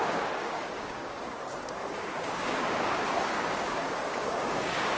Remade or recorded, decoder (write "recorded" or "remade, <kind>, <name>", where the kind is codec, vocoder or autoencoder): remade, codec, DAC